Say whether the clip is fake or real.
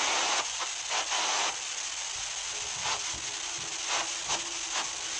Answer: real